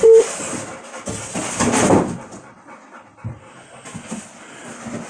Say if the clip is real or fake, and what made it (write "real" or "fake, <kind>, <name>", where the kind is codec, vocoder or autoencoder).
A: real